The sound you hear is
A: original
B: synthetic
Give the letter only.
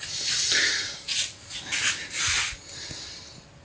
A